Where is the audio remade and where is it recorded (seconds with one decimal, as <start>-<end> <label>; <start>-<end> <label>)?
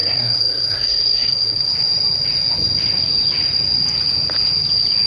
0.0-1.7 remade; 1.7-5.1 recorded